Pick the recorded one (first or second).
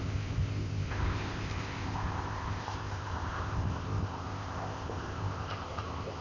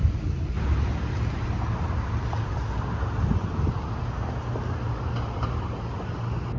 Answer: second